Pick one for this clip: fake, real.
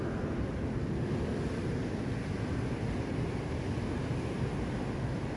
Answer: real